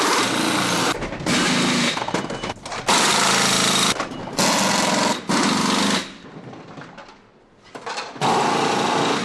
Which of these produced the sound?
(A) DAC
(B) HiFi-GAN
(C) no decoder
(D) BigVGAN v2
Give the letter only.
C